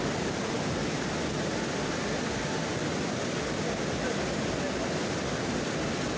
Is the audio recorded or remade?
recorded